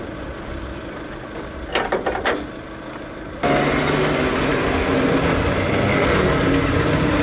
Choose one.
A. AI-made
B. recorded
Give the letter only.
B